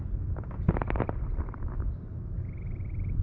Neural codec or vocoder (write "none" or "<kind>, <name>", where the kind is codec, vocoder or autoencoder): none